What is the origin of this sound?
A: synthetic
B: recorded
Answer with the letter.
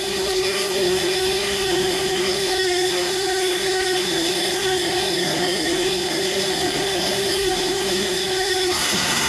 A